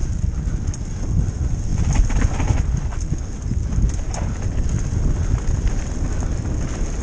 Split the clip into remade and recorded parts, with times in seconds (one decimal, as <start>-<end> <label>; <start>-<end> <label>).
0.0-7.0 recorded